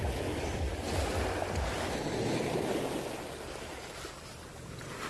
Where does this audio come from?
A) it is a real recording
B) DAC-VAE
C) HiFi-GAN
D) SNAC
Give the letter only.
A